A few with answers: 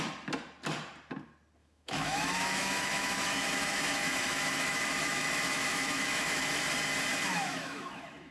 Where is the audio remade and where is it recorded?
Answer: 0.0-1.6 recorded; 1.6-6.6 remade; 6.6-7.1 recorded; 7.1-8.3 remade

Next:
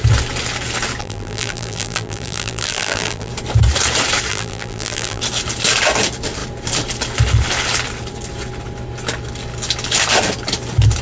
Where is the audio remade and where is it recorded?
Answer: 0.0-1.0 recorded; 1.0-3.3 remade; 3.3-4.3 recorded; 4.3-5.2 remade; 5.2-11.0 recorded

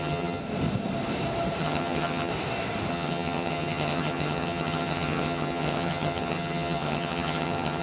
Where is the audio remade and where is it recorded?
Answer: 0.0-0.4 remade; 0.4-1.6 recorded; 1.6-2.3 remade; 2.3-2.9 recorded; 2.9-7.8 remade

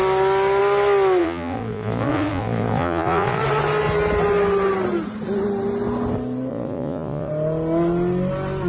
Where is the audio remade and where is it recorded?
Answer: 0.0-1.2 recorded; 1.2-3.4 remade; 3.4-6.5 recorded; 6.5-7.3 remade; 7.3-8.7 recorded